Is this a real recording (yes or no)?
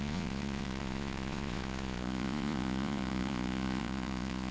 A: no